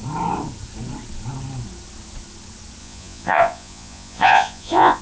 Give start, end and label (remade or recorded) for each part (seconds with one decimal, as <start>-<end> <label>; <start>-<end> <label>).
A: 0.0-2.8 recorded; 2.8-5.0 remade